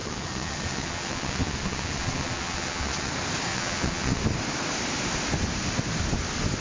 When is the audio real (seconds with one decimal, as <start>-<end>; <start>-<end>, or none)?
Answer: 3.1-3.5; 4.2-6.6